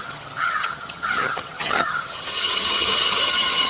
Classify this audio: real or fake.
fake